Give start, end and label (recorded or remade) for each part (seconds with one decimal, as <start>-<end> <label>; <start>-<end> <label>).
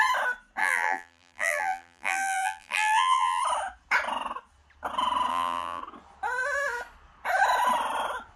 0.0-0.6 recorded; 0.6-3.4 remade; 3.4-5.3 recorded; 5.3-5.8 remade; 5.8-8.4 recorded